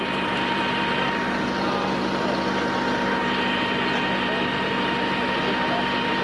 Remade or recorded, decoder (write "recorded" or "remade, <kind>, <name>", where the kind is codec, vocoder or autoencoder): recorded